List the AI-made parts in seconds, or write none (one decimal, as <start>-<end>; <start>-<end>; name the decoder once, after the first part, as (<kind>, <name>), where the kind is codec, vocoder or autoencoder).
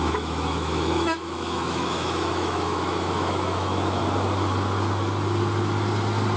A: 0.0-4.0 (autoencoder, DAC-VAE)